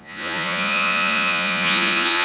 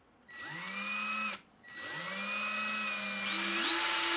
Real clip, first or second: second